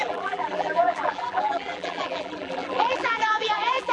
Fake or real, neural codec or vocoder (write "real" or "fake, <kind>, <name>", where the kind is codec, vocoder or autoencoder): fake, vocoder, BigVGAN v2